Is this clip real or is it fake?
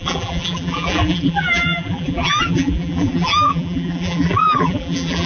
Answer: fake